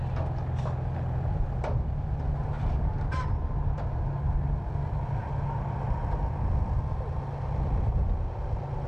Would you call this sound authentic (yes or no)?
yes